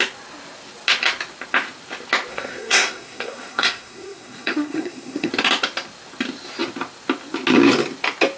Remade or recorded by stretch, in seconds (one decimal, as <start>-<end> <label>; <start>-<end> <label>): 0.0-2.3 recorded; 2.3-5.3 remade; 5.3-8.4 recorded